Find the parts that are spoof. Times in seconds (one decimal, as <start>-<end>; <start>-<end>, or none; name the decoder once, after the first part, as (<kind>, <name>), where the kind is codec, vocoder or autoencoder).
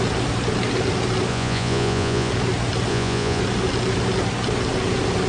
1.3-2.3 (vocoder, Vocos); 2.9-3.4